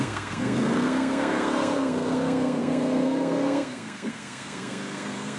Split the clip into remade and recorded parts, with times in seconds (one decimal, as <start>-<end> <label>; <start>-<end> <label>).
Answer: 0.0-5.4 remade